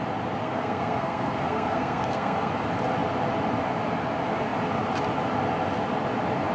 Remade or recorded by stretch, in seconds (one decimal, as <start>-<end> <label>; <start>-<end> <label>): 0.0-0.4 recorded; 0.4-2.5 remade; 2.5-6.5 recorded